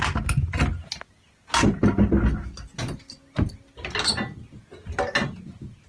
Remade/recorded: recorded